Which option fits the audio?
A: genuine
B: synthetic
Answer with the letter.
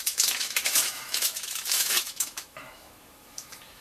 B